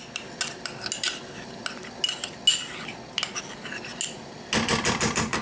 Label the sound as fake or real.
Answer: real